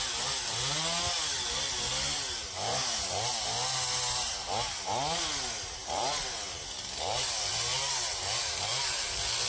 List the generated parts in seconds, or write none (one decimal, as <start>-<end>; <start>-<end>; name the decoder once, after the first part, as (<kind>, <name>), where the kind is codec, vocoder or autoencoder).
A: none